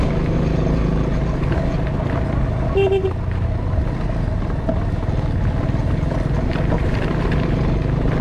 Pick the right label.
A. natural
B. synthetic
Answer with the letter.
A